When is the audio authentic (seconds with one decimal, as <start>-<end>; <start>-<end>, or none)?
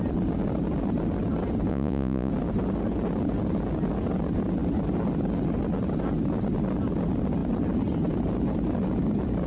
0.0-1.7; 2.3-9.5